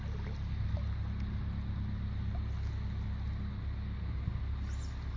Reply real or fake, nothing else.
real